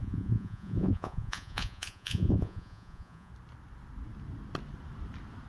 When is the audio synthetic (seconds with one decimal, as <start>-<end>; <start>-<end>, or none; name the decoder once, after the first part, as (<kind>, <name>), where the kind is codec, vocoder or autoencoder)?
0.0-3.3 (vocoder, Vocos)